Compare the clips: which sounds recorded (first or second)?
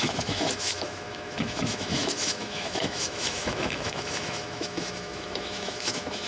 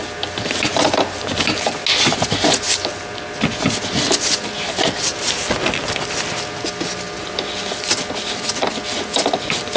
second